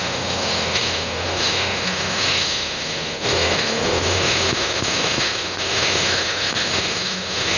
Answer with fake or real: fake